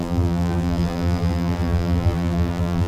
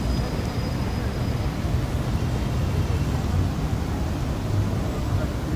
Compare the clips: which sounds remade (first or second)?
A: first